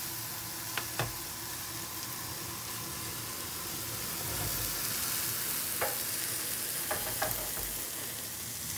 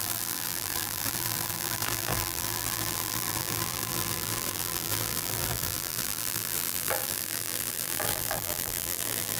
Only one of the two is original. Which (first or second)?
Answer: first